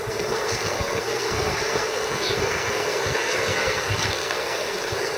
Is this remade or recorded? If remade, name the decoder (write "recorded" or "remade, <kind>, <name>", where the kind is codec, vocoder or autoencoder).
remade, codec, SNAC